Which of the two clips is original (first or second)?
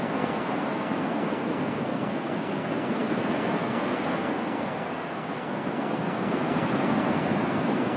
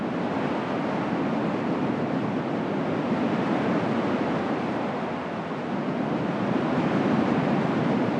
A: second